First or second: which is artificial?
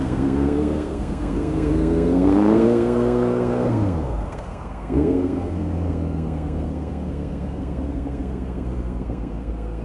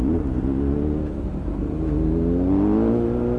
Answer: first